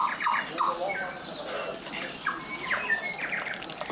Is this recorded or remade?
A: recorded